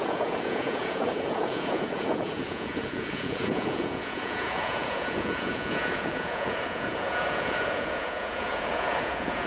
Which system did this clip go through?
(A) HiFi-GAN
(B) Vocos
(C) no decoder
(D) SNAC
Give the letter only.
B